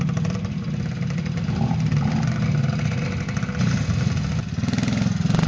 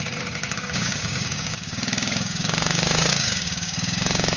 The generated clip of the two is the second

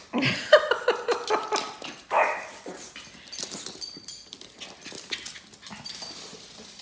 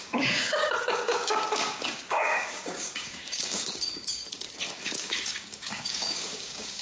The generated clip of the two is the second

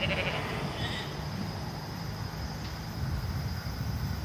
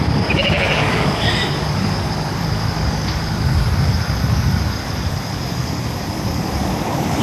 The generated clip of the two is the second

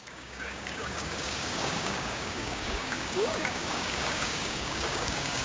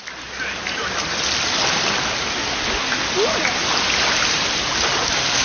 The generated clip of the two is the first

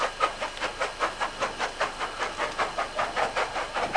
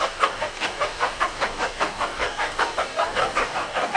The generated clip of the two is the second